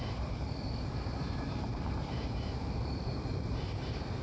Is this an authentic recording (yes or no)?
no